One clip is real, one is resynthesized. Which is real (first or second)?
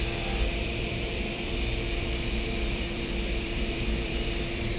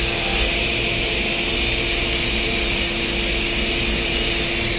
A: second